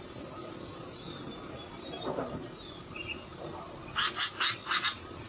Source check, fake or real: real